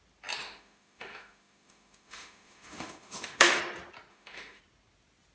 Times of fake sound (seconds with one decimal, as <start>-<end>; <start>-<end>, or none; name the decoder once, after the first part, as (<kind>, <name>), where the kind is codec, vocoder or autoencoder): 0.4-3.6 (autoencoder, DAC-VAE); 4.1-4.6